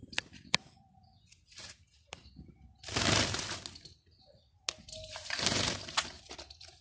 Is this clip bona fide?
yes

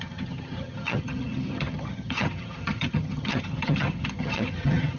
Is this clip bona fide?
no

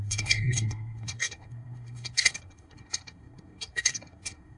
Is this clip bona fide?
no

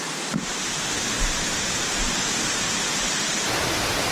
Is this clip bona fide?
no